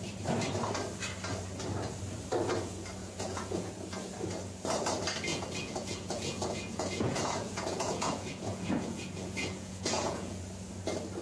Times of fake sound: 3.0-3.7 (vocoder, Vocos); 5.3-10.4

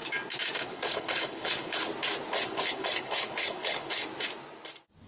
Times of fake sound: 0.6-1.9 (codec, HILCodec); 2.4-4.0

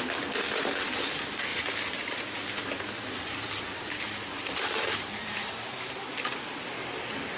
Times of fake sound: 1.5-5.9 (vocoder, BigVGAN v2)